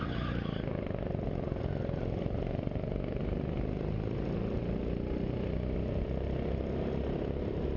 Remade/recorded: recorded